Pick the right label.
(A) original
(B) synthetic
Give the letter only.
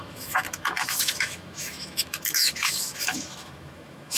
B